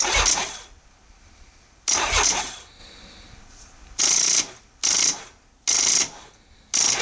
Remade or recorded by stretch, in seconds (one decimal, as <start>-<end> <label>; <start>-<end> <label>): 0.0-7.0 recorded